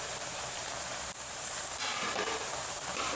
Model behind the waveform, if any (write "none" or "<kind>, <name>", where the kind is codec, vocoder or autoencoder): vocoder, BigVGAN v2